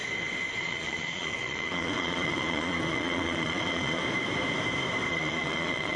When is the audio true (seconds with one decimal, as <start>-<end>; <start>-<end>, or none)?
0.0-0.6; 4.0-5.1